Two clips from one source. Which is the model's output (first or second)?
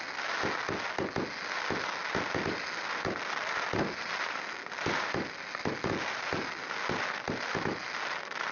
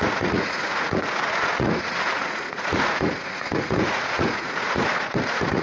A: second